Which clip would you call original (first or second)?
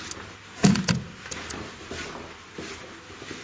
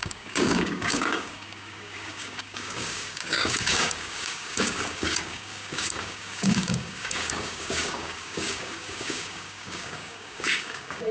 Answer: first